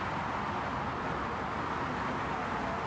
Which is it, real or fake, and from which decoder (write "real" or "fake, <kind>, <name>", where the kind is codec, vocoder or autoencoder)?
real